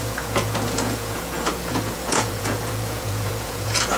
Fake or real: fake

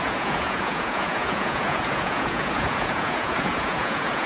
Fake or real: fake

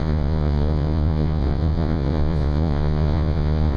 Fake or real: fake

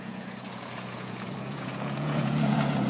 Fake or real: fake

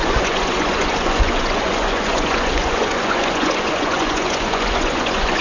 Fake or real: fake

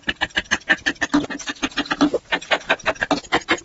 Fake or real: real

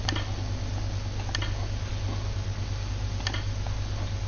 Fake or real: real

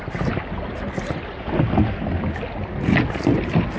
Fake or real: real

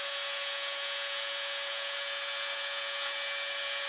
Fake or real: fake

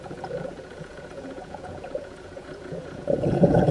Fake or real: fake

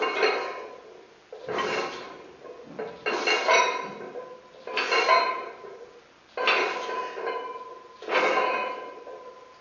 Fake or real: real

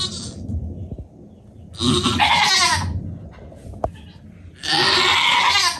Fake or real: real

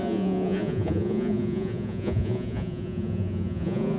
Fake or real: fake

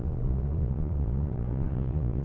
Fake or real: fake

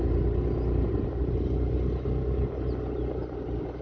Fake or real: real